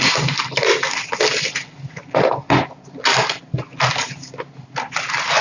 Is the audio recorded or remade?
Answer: recorded